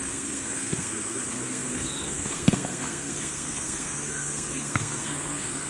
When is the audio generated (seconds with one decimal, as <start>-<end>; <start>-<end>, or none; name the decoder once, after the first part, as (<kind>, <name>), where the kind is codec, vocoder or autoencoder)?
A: 0.0-5.7 (codec, SNAC)